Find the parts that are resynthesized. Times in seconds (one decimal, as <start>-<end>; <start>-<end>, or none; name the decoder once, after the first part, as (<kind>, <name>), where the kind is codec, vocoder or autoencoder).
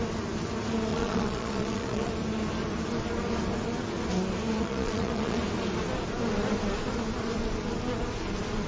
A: 0.9-2.1 (vocoder, Vocos); 4.6-5.4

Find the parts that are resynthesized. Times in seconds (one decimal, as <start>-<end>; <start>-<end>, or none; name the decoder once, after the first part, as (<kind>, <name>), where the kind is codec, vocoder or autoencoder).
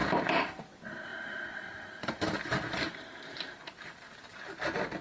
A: 0.0-0.6 (vocoder, BigVGAN v2); 1.1-4.1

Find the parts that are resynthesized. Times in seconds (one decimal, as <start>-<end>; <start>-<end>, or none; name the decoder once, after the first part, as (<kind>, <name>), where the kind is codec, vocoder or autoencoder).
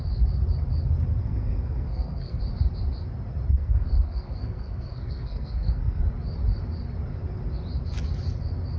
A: 1.2-2.4 (codec, SNAC); 3.5-6.0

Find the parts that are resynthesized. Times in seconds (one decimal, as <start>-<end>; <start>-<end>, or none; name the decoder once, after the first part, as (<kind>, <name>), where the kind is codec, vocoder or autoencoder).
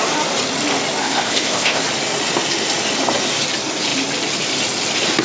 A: 1.0-1.8 (codec, ZipCodec)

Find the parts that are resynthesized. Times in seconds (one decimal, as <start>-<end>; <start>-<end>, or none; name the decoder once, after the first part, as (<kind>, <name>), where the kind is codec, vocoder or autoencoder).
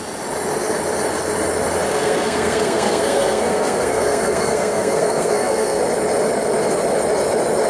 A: 1.9-5.8 (codec, SNAC)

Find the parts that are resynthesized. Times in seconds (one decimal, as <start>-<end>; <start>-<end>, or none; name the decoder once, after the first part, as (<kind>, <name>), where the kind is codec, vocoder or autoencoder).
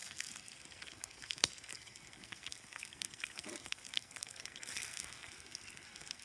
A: 0.0-6.2 (codec, SNAC)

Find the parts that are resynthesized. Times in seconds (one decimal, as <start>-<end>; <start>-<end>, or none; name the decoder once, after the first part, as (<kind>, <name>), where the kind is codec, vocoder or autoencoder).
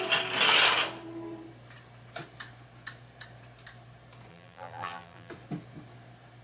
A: 4.3-5.3 (vocoder, BigVGAN v2)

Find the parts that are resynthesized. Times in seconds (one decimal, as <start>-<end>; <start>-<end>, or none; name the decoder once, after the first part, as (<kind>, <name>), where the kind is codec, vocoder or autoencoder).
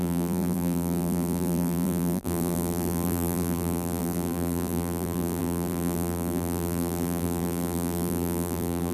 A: 0.0-8.9 (vocoder, BigVGAN v2)